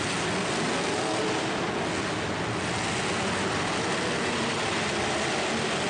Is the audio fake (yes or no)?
no